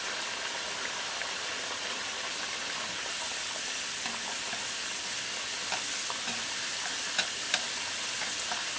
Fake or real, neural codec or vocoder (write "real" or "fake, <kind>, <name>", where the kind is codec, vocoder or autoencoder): real